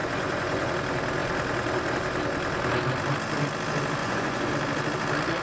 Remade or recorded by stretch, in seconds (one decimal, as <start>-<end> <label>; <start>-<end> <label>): 0.0-0.7 remade; 0.7-4.0 recorded; 4.0-4.5 remade; 4.5-5.4 recorded